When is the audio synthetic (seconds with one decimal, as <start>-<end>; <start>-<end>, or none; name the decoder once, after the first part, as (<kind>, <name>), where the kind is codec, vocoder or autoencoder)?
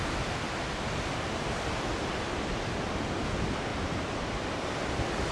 3.7-4.6 (vocoder, BigVGAN v2)